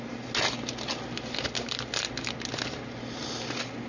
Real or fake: real